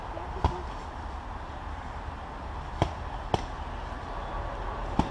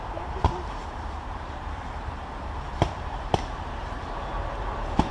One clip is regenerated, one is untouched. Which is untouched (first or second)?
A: first